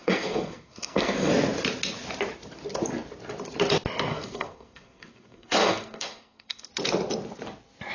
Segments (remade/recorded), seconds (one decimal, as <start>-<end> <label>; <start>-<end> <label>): 0.0-1.3 remade; 1.3-4.1 recorded; 4.1-6.7 remade; 6.7-7.9 recorded